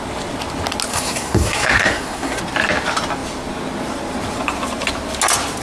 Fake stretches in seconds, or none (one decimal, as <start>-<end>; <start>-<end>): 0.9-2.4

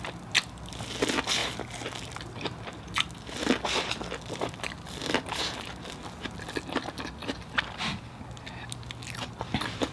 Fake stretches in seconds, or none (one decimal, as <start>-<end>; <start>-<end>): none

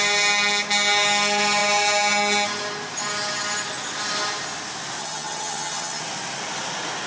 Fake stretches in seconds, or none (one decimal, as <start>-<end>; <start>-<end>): 5.0-6.0

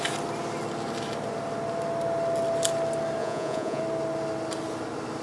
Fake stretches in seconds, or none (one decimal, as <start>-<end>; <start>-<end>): 3.2-3.8

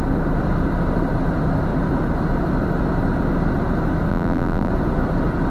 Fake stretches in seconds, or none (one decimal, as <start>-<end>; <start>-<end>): 4.1-4.7

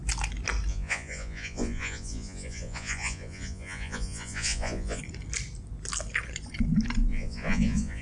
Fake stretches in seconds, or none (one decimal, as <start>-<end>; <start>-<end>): 0.7-5.0; 7.1-8.0